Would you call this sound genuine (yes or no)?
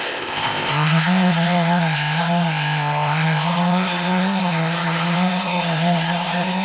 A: no